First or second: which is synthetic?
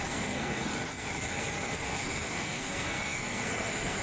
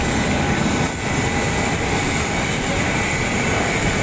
first